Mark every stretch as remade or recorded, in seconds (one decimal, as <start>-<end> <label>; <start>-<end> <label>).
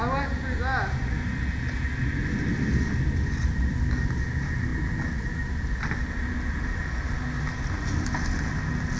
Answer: 0.0-9.0 recorded